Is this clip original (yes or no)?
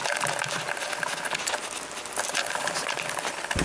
yes